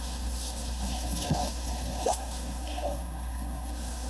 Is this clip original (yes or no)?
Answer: no